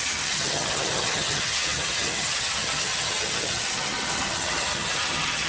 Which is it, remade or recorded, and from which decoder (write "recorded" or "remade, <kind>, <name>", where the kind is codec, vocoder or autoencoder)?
remade, vocoder, HiFi-GAN